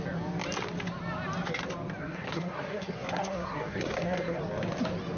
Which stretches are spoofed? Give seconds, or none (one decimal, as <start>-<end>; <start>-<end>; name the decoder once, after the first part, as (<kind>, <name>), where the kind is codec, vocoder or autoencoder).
2.0-4.4 (codec, SNAC)